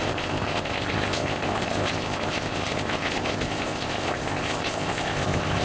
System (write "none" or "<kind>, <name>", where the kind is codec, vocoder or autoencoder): codec, ZipCodec